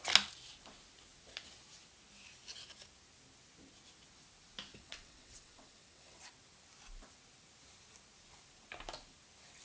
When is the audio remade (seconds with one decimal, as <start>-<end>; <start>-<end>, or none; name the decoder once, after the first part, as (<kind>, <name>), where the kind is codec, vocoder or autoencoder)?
4.7-6.2 (vocoder, WaveNeXt)